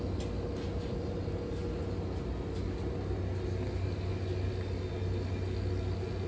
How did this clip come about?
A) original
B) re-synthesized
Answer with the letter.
A